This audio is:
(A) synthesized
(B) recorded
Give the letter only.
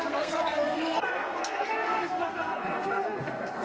A